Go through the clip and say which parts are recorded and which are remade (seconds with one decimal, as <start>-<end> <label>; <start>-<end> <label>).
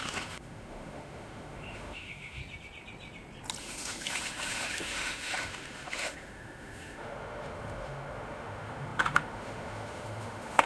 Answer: 0.0-2.4 remade; 2.4-3.6 recorded; 3.6-10.7 remade